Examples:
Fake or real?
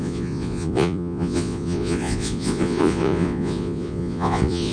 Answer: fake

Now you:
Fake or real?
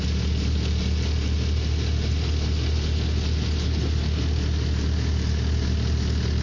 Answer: real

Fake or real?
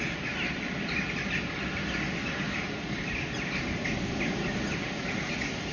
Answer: real